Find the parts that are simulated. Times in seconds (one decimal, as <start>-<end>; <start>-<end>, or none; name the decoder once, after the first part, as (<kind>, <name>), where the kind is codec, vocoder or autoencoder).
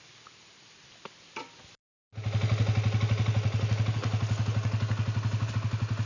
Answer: none